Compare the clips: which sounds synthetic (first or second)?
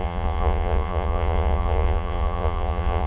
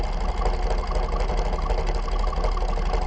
first